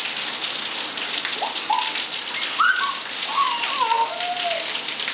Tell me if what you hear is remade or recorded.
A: recorded